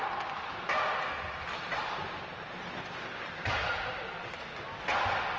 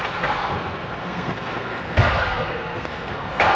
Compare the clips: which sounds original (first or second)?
first